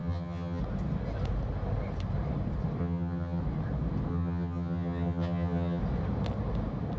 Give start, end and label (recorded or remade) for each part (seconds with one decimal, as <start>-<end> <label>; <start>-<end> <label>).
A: 0.0-0.6 remade; 0.6-2.8 recorded; 2.8-3.4 remade; 3.4-4.1 recorded; 4.1-5.8 remade; 5.8-7.0 recorded